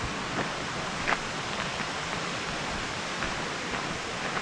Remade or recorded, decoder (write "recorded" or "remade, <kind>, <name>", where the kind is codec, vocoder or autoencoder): recorded